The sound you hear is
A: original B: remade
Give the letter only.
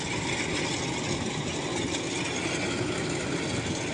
A